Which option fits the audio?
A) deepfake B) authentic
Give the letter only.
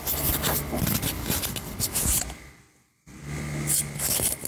B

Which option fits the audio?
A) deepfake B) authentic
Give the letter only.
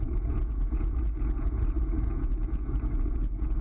A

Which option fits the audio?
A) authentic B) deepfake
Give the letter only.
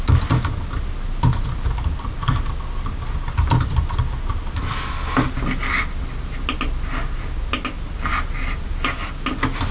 A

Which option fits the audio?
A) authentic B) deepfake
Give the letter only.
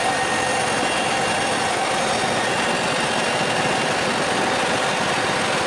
A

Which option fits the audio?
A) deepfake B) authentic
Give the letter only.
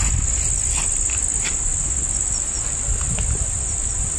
B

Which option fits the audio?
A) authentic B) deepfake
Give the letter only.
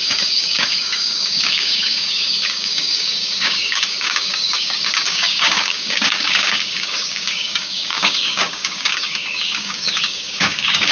B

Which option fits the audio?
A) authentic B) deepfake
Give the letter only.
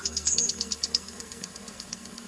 B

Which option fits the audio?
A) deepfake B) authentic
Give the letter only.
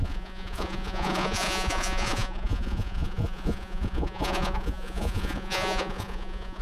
A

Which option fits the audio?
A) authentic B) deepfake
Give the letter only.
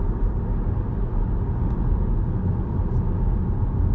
A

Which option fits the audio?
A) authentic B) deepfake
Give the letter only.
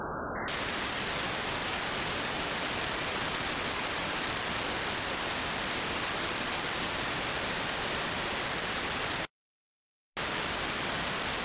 A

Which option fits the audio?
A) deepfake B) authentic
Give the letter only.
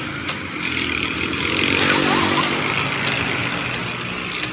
B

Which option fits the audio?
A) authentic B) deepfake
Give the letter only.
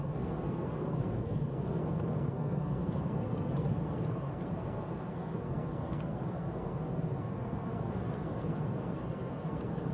B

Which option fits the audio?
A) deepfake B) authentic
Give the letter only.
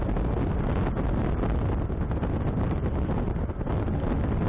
B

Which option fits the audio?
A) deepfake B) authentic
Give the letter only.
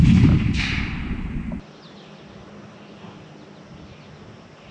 B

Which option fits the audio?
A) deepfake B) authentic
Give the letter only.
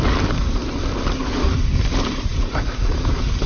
B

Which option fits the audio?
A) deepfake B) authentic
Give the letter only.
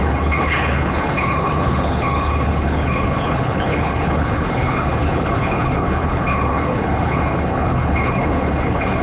A